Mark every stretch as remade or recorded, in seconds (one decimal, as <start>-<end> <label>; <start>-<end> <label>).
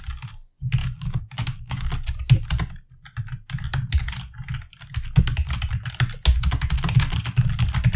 0.0-0.8 recorded; 0.8-1.9 remade; 1.9-8.0 recorded